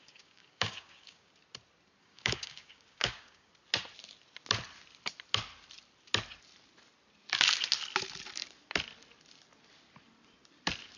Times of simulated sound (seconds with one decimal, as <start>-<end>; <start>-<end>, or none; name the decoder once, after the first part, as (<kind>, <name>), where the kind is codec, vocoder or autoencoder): 0.0-1.3 (codec, DAC); 2.0-3.5